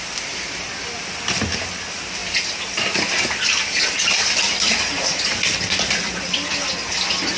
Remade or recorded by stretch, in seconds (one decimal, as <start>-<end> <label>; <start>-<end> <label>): 0.0-7.4 recorded